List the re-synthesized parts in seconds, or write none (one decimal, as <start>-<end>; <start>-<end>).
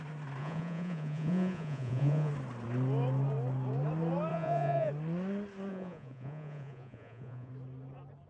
0.4-2.3; 4.3-4.9; 5.7-7.5